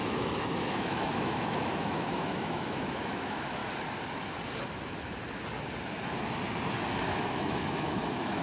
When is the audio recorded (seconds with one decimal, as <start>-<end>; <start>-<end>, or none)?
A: 3.6-7.1